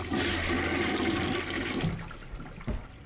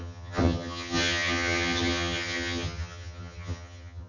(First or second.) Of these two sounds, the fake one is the second